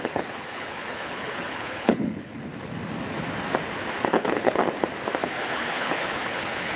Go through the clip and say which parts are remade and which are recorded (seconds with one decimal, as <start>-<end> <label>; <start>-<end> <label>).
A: 0.0-2.3 remade; 2.3-4.0 recorded; 4.0-4.6 remade; 4.6-5.2 recorded; 5.2-6.8 remade